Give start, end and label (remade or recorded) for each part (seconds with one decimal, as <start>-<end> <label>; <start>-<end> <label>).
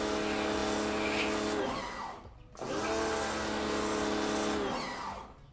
0.0-5.5 recorded